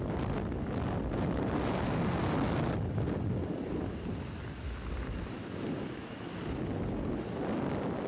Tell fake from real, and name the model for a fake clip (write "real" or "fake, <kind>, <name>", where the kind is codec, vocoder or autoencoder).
real